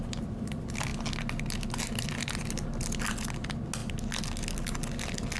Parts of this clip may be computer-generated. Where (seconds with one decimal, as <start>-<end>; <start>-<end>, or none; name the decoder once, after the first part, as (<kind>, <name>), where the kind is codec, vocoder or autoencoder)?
none